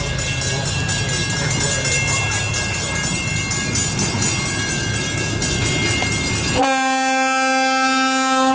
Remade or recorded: recorded